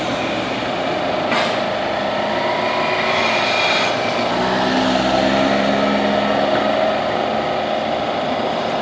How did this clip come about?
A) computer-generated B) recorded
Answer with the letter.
B